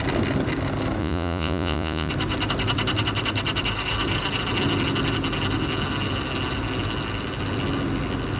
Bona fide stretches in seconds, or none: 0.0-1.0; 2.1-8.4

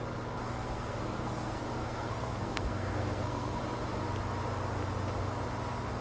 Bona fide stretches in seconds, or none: 0.0-0.4; 3.6-6.0

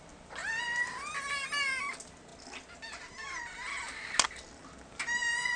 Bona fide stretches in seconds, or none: 0.0-5.6

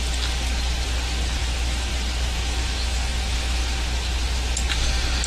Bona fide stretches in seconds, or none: 0.0-1.4; 1.9-2.4; 3.6-5.3

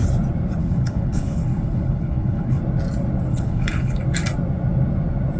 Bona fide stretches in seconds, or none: 0.0-0.6; 2.6-3.3; 4.0-5.4